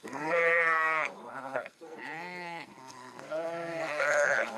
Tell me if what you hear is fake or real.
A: fake